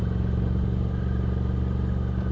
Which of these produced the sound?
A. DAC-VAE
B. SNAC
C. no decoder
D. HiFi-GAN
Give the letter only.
C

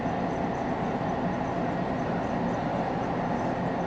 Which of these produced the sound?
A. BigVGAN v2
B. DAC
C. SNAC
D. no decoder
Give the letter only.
D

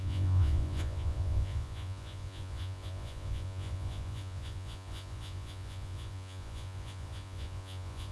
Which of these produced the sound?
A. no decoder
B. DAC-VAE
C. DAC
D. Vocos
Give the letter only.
D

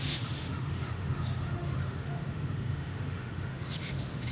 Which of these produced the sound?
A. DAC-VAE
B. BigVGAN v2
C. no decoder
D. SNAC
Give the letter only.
A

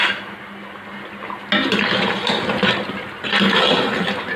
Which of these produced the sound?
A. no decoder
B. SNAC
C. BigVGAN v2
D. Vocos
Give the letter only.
A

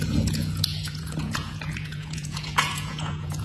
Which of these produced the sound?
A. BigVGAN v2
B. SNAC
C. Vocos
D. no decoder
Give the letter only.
C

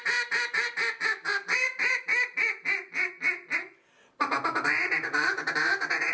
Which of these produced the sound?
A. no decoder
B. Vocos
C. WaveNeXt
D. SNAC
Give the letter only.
A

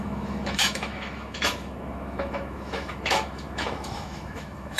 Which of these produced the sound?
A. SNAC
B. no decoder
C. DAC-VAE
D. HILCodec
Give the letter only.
C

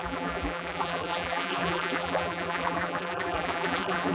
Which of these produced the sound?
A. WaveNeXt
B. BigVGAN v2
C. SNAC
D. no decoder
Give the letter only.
B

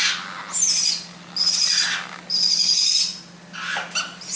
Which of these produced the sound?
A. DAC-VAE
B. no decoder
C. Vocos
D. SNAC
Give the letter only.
B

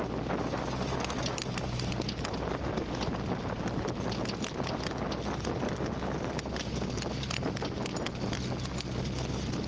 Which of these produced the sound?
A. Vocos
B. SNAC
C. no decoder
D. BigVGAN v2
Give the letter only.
C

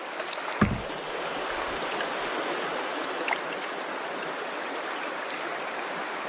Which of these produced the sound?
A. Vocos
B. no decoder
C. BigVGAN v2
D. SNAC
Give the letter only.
B